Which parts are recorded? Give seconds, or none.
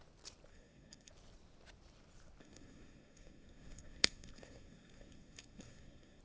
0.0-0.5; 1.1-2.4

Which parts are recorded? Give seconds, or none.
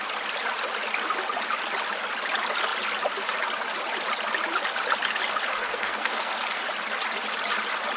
0.0-5.5; 6.6-8.0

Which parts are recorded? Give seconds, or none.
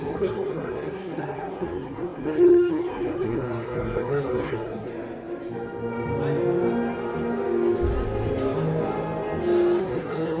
4.9-9.8